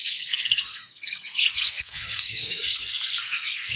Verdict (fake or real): fake